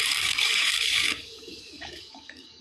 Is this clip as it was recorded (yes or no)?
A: no